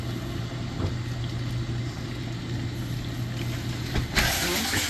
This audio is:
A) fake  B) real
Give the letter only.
B